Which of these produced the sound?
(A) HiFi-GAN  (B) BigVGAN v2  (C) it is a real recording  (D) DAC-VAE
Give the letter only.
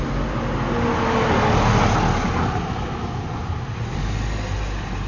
C